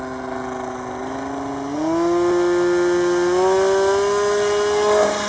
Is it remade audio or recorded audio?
recorded